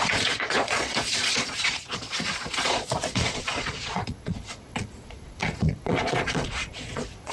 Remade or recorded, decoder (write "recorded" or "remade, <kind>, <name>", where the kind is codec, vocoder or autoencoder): remade, vocoder, Vocos